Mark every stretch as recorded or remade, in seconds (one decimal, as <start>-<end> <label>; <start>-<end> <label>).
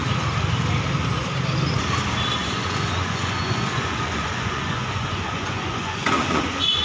0.0-2.4 recorded; 2.4-6.8 remade